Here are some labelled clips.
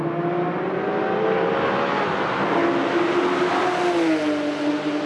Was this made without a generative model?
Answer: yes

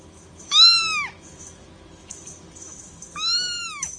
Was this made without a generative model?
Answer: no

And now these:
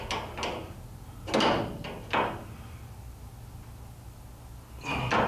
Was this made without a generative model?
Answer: yes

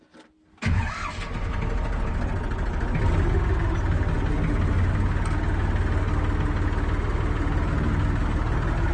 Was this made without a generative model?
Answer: yes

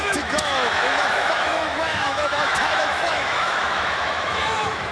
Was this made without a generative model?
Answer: no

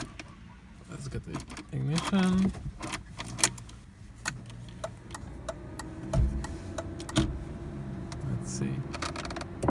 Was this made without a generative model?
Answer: yes